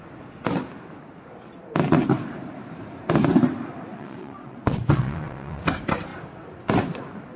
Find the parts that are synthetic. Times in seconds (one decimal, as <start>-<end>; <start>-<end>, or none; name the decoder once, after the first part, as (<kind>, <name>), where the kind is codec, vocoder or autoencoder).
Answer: 3.9-5.6 (vocoder, WaveNeXt)